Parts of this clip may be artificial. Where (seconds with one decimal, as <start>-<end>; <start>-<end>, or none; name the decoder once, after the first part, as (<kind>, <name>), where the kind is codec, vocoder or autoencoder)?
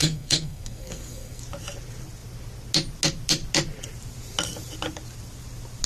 0.0-1.4 (codec, SNAC)